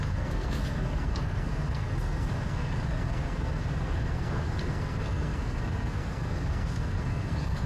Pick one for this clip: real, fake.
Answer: fake